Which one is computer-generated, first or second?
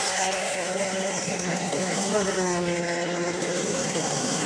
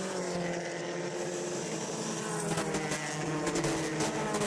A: first